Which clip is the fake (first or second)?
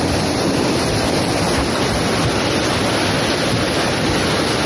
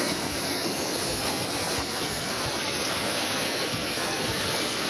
second